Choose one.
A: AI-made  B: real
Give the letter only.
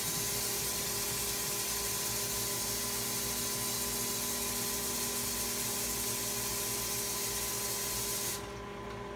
B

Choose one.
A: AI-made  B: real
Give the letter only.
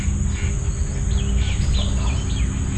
B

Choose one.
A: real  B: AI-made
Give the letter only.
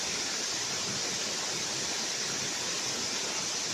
B